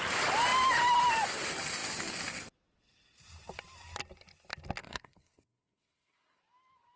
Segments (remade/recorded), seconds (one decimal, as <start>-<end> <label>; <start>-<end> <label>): 0.0-4.8 recorded; 4.8-6.4 remade; 6.4-7.0 recorded